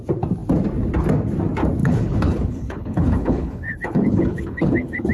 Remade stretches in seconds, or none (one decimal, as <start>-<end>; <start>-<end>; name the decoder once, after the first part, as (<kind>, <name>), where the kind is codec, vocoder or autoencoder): 1.8-5.1 (codec, HILCodec)